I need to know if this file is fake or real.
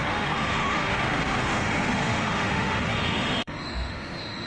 fake